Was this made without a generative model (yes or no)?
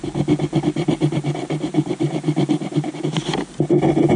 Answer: yes